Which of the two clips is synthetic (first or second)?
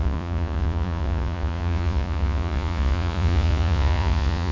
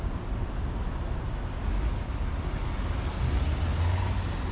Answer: first